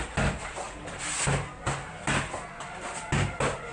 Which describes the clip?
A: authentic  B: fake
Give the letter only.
A